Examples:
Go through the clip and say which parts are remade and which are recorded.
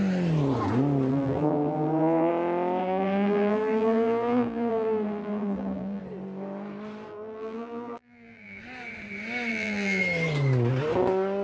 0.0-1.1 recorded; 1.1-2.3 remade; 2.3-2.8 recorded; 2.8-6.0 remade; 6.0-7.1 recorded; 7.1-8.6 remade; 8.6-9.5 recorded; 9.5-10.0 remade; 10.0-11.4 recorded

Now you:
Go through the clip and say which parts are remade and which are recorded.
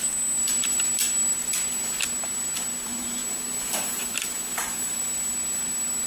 0.0-3.2 recorded; 3.2-5.0 remade; 5.0-6.1 recorded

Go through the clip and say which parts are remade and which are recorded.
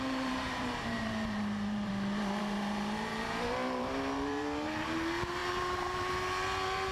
0.0-1.9 remade; 1.9-2.4 recorded; 2.4-6.9 remade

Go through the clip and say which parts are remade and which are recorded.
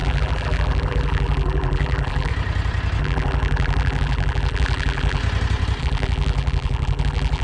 0.0-2.3 remade; 2.3-3.0 recorded; 3.0-5.2 remade; 5.2-5.8 recorded; 5.8-7.4 remade